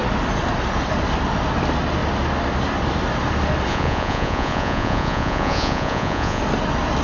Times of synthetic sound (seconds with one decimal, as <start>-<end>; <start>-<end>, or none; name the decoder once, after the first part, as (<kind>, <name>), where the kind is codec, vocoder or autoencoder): 3.7-6.4 (vocoder, Vocos)